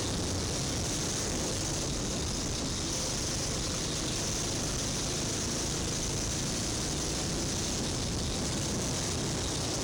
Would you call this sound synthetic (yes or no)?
no